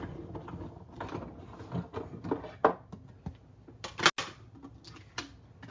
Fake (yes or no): no